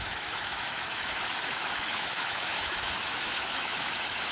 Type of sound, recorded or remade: remade